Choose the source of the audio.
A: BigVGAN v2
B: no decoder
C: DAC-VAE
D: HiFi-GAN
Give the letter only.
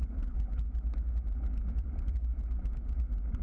A